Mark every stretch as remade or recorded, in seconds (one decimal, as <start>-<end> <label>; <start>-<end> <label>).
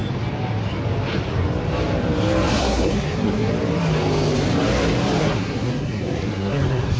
0.0-2.5 recorded; 2.5-3.5 remade; 3.5-5.2 recorded; 5.2-7.0 remade